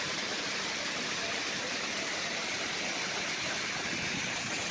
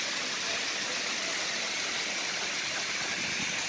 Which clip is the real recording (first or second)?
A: second